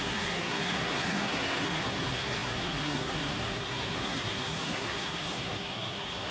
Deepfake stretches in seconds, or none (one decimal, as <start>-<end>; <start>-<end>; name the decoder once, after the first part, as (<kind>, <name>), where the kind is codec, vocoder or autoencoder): 0.0-6.3 (codec, SNAC)